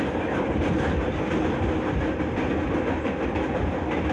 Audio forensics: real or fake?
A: real